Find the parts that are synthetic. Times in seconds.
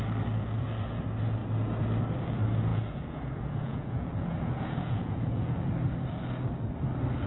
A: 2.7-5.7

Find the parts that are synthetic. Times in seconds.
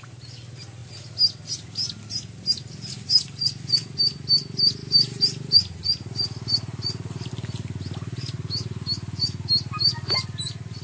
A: none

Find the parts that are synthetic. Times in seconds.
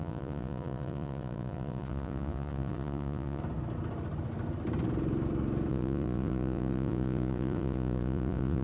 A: 0.0-3.4; 5.7-8.6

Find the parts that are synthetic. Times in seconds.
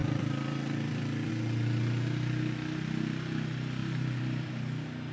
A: 0.0-1.3; 3.8-4.5